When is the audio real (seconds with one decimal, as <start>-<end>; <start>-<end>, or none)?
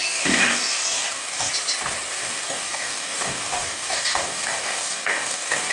1.5-2.2